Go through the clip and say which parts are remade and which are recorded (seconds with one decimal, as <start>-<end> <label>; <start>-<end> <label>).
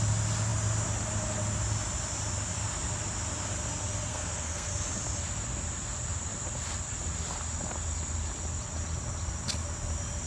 0.0-4.1 recorded; 4.1-4.7 remade; 4.7-10.3 recorded